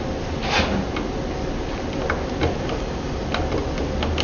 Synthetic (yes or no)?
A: no